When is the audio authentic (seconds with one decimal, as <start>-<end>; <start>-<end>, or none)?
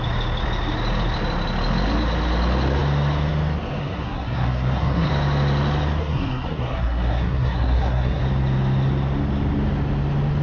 0.0-3.8; 5.1-6.0; 8.2-10.4